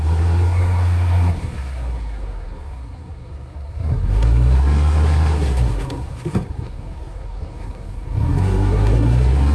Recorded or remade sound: remade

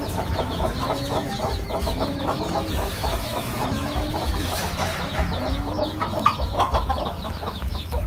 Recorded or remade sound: remade